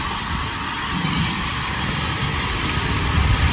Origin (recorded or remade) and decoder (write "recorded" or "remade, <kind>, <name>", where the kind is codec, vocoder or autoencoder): remade, vocoder, BigVGAN v2